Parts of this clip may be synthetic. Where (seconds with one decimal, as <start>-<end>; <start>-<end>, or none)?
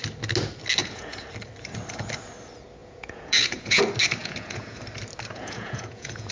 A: 0.8-1.3; 2.8-3.8; 4.2-4.8; 5.3-6.3